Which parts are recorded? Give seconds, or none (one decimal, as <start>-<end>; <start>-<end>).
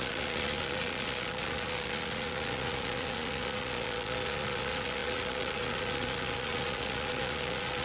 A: none